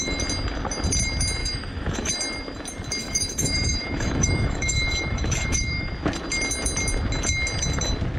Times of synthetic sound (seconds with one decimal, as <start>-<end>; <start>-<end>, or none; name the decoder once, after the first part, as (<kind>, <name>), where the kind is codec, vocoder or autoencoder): 1.4-2.1 (autoencoder, DAC-VAE); 3.0-5.9